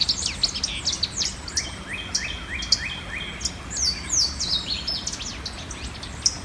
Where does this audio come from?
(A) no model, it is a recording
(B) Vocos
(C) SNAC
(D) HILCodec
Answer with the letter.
A